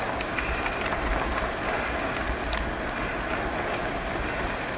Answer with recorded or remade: recorded